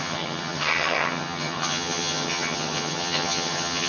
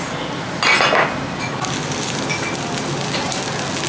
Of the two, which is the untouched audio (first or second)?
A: second